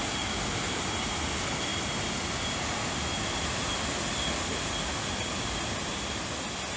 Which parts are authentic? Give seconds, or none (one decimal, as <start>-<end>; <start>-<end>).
0.0-6.8